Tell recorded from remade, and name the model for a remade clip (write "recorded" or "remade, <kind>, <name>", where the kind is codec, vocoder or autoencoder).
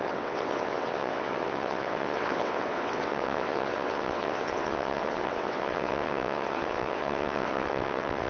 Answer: remade, vocoder, WaveNeXt